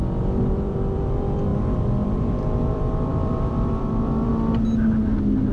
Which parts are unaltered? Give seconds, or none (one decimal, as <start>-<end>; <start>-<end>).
4.3-5.5